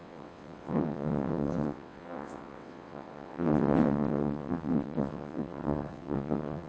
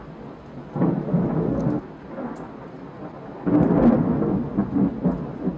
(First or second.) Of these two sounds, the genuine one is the second